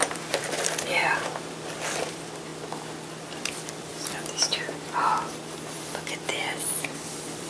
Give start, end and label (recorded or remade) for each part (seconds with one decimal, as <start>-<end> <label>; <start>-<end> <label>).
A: 0.0-2.5 remade; 2.5-3.2 recorded; 3.2-3.9 remade; 3.9-6.7 recorded; 6.7-7.5 remade